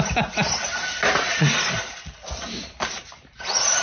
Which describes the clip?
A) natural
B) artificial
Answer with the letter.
A